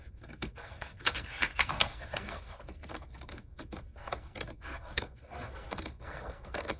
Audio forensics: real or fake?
fake